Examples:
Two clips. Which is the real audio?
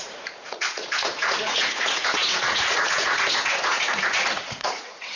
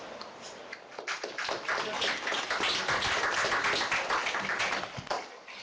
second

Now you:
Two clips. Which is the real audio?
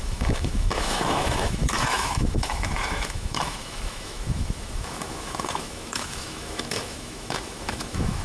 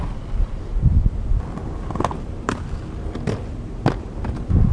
second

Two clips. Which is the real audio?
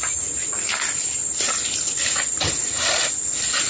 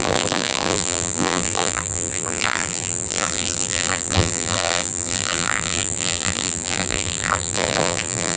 first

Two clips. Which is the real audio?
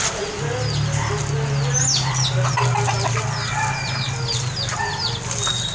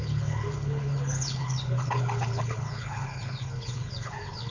first